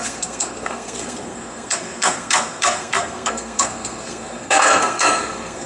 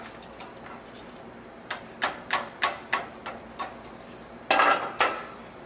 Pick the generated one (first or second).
first